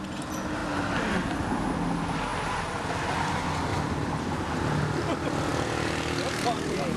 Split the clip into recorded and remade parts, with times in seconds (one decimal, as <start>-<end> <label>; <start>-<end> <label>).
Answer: 0.0-3.7 recorded; 3.7-4.4 remade; 4.4-7.0 recorded